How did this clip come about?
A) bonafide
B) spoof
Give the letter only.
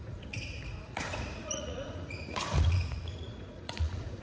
B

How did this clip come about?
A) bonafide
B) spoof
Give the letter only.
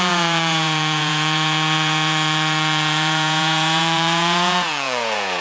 B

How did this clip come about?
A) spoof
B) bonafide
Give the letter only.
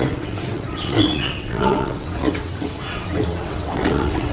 A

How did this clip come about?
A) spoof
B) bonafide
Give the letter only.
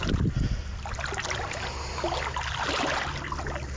B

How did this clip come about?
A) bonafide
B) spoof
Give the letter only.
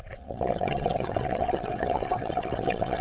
B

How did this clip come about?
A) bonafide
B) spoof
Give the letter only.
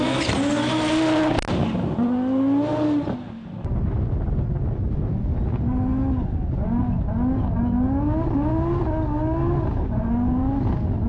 A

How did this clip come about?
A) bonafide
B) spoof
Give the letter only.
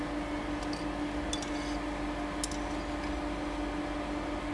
A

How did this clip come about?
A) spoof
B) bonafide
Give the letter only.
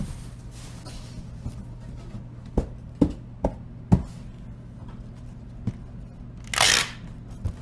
B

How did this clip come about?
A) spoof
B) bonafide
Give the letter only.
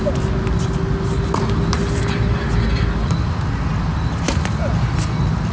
B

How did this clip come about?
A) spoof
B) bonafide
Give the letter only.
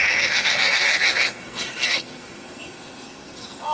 A